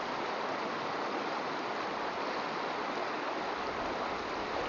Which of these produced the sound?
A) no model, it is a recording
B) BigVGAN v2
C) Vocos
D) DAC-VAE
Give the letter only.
A